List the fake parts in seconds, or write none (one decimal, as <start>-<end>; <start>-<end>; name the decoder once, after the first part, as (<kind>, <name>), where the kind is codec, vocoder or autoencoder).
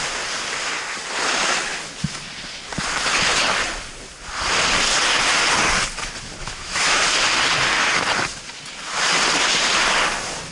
6.4-7.0 (autoencoder, DAC-VAE)